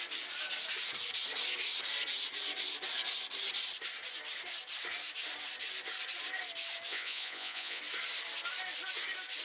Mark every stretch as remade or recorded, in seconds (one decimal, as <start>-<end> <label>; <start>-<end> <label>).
0.0-6.9 recorded; 6.9-7.8 remade; 7.8-9.4 recorded